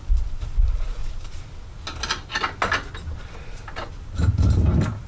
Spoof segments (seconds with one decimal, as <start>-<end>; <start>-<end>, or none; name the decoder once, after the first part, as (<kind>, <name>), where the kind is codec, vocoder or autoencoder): none

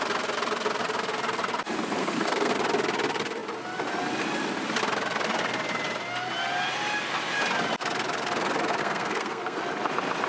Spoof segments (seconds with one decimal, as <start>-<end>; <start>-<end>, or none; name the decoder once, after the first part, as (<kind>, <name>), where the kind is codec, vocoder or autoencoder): 2.0-2.5 (codec, SNAC); 8.8-9.6

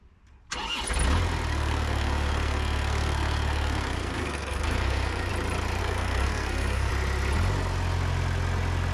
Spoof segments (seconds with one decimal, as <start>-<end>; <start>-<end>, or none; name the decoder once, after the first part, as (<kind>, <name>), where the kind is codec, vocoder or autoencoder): 1.5-5.3 (codec, SNAC); 5.8-6.9

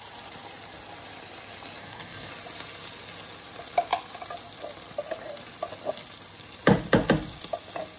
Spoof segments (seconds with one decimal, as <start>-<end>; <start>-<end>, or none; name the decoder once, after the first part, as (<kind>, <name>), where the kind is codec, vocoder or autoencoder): 1.8-2.3 (codec, SNAC)

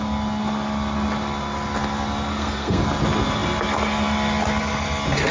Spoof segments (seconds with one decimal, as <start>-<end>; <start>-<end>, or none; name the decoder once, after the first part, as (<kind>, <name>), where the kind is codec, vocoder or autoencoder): 2.3-2.8 (codec, SNAC)

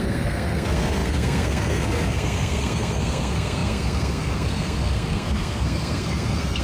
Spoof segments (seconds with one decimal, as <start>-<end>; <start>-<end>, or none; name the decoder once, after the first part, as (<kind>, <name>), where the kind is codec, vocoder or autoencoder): 0.0-6.6 (codec, SNAC)